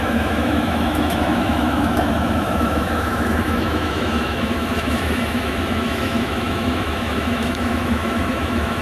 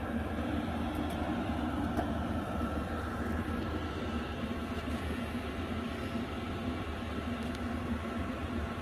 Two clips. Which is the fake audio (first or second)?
first